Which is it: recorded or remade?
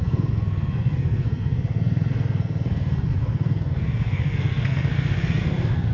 remade